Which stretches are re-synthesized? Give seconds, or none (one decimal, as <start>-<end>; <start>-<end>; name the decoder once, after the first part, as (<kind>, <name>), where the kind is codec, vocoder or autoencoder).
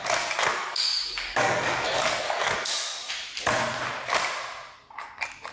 0.5-3.1 (codec, DAC)